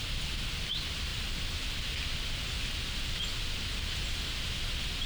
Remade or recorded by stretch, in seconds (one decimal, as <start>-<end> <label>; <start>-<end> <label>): 0.0-5.1 recorded